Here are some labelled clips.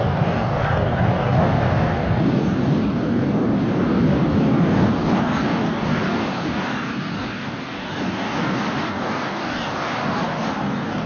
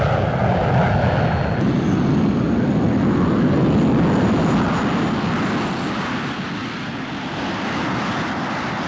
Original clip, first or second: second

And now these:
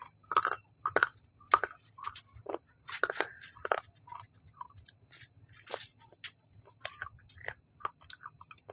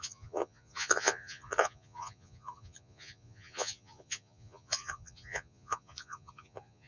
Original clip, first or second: first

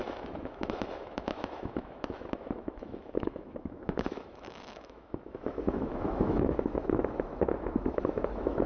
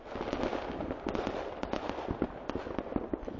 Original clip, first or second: second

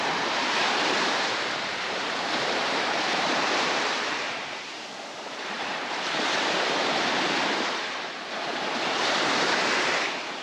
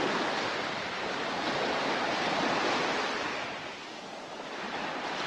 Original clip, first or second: second